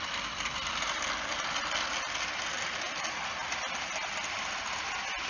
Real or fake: real